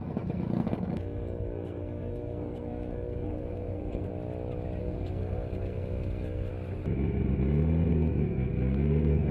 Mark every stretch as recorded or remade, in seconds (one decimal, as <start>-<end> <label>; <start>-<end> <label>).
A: 0.0-4.1 remade; 4.1-4.8 recorded; 4.8-6.5 remade; 6.5-7.9 recorded; 7.9-9.3 remade